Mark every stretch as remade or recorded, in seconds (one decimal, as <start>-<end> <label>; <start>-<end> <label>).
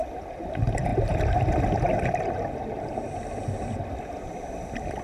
0.0-5.0 recorded